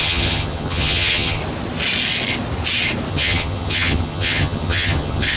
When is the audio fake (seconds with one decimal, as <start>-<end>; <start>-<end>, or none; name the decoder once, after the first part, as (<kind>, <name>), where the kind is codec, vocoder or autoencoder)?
0.0-1.4 (vocoder, HiFi-GAN); 3.1-5.4